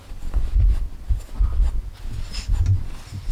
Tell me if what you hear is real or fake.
real